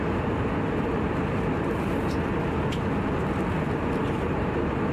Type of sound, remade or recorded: recorded